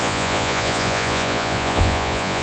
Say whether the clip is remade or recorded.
remade